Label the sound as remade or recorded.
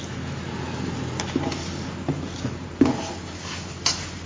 recorded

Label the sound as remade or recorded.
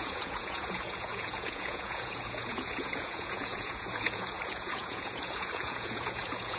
remade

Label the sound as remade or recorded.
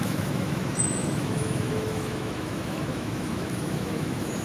remade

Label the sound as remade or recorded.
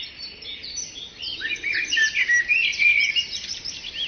recorded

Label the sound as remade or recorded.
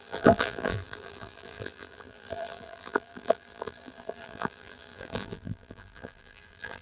remade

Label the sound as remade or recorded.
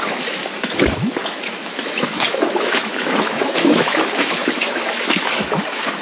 remade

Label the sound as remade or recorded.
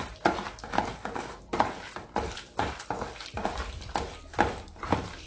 remade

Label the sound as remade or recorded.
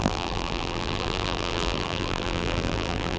remade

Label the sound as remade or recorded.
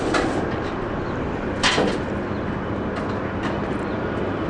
recorded